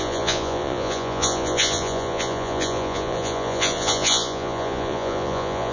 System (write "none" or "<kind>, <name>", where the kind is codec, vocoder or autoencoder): vocoder, Vocos